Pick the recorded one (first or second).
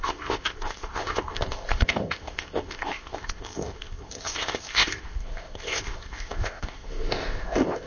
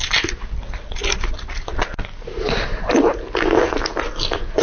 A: second